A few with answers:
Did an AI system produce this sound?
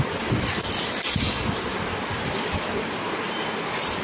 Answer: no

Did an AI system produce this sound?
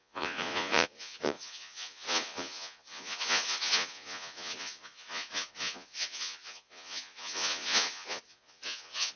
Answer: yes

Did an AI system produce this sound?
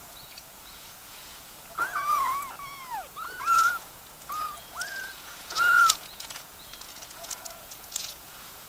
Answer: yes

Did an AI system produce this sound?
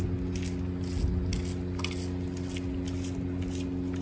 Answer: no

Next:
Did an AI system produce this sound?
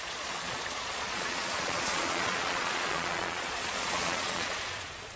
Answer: yes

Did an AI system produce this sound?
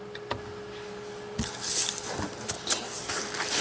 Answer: no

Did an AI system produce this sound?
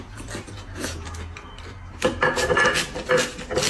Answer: no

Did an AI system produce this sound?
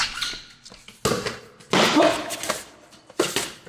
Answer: no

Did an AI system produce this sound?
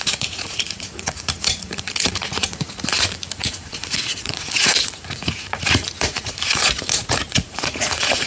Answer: yes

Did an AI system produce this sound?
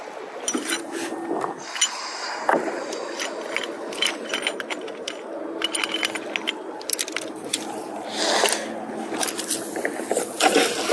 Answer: no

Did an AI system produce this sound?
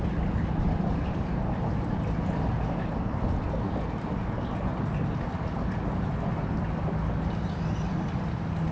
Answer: no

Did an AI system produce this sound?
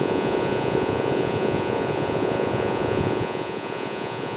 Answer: yes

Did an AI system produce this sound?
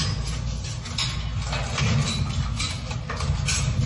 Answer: no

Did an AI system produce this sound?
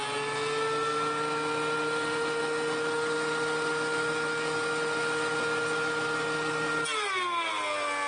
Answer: no